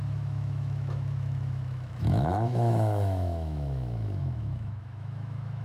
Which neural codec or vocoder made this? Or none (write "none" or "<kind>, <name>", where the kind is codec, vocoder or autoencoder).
autoencoder, DAC-VAE